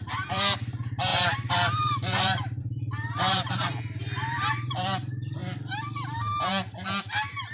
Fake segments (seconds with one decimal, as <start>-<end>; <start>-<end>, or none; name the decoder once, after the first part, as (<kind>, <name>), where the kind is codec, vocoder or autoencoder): 0.0-5.4 (vocoder, BigVGAN v2); 7.0-7.5